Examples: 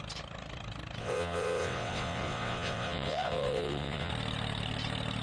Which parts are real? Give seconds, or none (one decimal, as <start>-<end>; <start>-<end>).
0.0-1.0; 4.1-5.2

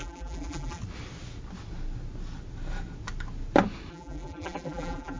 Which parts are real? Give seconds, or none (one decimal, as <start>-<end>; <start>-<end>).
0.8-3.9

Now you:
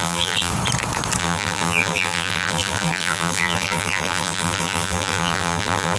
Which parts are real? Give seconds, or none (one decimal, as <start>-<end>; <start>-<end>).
0.5-1.2

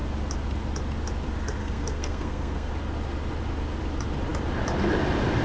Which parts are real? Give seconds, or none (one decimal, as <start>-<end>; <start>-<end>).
0.0-1.6; 2.7-5.4

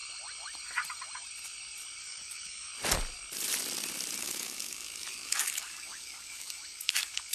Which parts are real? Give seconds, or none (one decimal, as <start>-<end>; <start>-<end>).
0.0-2.0; 2.7-4.2

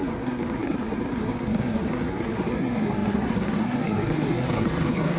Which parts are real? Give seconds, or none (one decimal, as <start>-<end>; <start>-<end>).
none

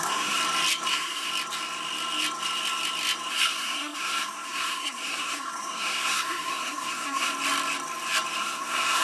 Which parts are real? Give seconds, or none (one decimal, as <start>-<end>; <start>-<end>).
0.4-0.9; 1.3-3.3; 7.3-8.4

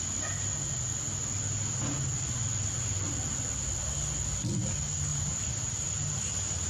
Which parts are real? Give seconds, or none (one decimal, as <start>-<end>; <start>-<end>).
0.0-5.1